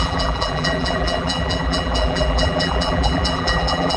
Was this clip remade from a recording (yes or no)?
yes